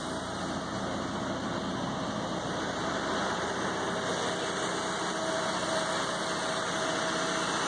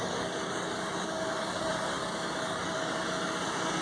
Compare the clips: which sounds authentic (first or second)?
first